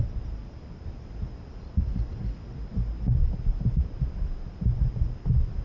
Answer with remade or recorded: recorded